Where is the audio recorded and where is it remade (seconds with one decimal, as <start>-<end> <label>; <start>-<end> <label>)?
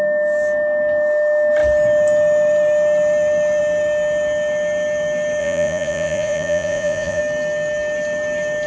0.0-5.4 recorded; 5.4-7.2 remade; 7.2-8.7 recorded